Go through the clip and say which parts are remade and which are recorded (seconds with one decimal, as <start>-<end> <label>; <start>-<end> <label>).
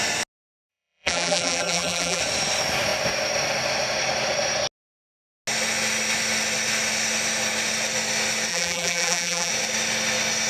0.0-0.7 recorded; 0.7-2.2 remade; 2.2-8.5 recorded; 8.5-9.5 remade; 9.5-10.5 recorded